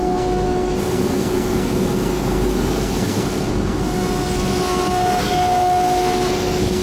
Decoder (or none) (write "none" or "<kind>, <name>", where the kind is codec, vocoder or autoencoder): codec, SNAC